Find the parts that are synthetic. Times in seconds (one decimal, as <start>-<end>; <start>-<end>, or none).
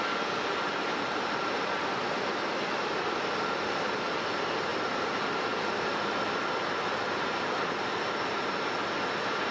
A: none